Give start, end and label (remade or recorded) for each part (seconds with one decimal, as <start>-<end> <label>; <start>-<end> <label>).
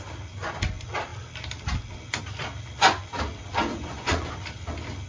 0.0-3.7 recorded; 3.7-4.3 remade; 4.3-5.1 recorded